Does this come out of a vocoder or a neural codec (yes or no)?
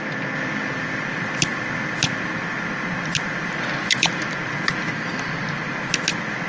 no